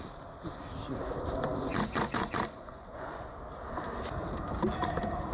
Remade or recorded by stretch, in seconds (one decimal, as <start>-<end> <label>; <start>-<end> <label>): 0.0-1.7 recorded; 1.7-3.4 remade; 3.4-5.3 recorded